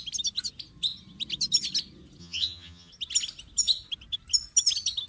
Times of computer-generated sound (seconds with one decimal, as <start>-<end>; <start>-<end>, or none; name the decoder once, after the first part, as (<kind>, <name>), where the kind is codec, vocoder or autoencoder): 2.2-2.9 (vocoder, HiFi-GAN)